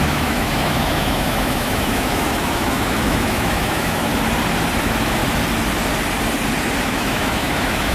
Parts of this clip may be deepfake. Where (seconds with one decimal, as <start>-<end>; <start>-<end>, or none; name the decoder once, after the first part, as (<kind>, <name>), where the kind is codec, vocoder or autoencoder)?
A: 0.0-4.1 (autoencoder, DAC-VAE); 4.8-5.2; 6.8-7.9